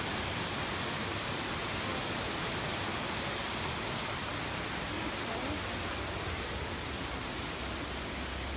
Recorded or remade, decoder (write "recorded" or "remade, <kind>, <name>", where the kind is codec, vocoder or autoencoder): recorded